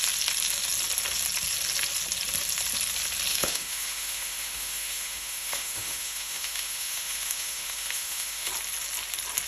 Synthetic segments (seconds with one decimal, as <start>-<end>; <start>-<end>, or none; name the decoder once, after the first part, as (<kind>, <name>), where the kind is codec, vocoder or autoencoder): 3.3-8.5 (autoencoder, DAC-VAE)